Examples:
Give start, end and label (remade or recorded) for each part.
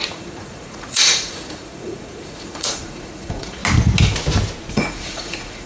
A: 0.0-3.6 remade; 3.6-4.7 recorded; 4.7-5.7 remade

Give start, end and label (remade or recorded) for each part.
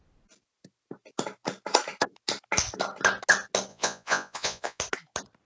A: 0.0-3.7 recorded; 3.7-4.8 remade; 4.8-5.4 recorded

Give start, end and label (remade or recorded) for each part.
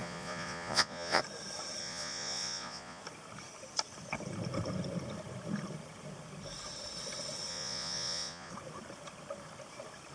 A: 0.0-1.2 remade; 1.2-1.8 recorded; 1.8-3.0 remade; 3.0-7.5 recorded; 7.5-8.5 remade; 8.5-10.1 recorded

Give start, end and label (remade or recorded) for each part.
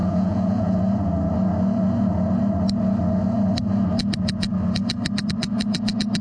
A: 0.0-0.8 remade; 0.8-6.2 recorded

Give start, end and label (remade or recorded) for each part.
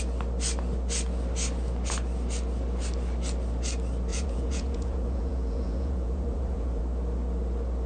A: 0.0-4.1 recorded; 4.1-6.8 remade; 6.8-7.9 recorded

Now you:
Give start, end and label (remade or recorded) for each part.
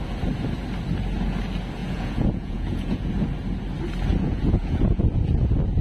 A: 0.0-1.8 recorded; 1.8-3.1 remade; 3.1-4.1 recorded; 4.1-5.2 remade; 5.2-5.8 recorded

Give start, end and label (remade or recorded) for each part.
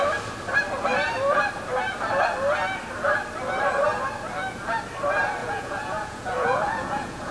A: 0.0-5.4 recorded; 5.4-7.3 remade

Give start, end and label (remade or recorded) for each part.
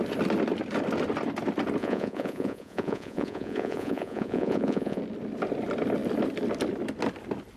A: 0.0-1.8 recorded; 1.8-5.0 remade; 5.0-7.6 recorded